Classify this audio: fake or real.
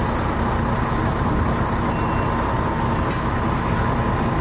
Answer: real